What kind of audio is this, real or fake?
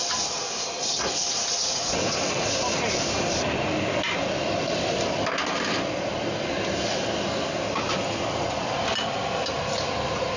real